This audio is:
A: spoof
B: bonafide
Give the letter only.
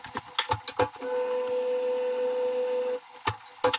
B